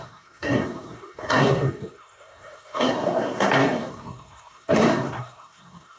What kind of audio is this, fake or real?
fake